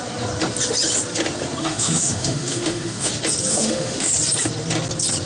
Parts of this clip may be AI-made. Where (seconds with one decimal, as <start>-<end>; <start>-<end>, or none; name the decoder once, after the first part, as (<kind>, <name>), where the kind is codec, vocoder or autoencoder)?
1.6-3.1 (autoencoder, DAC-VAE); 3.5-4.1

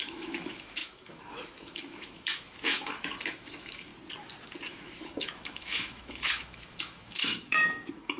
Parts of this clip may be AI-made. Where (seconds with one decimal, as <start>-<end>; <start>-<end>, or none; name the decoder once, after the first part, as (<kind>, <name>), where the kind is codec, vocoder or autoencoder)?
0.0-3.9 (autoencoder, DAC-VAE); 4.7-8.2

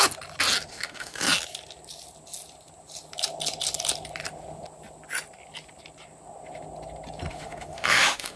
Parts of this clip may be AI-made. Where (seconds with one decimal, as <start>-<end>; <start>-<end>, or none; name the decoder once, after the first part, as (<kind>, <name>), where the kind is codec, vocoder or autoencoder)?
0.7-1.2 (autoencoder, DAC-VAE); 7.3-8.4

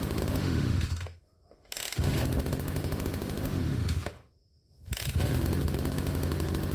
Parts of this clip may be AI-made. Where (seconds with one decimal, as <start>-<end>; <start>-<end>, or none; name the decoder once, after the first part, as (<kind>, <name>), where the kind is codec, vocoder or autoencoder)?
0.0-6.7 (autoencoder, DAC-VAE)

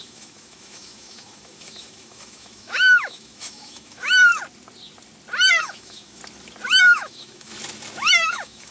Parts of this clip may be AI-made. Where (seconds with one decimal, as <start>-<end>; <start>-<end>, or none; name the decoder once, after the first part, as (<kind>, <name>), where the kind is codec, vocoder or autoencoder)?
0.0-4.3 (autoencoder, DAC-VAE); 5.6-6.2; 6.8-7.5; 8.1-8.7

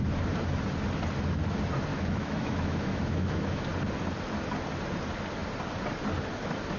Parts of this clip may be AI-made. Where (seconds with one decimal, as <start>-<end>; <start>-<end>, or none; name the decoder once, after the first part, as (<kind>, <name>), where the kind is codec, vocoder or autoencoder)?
1.9-3.7 (autoencoder, DAC-VAE)

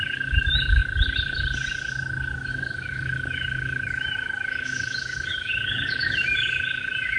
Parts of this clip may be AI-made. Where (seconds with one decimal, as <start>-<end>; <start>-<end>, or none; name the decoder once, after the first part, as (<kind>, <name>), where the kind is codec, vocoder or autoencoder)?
0.0-0.8 (autoencoder, DAC-VAE); 2.5-7.2